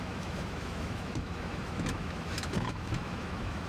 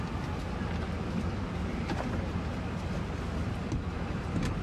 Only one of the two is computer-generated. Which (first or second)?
first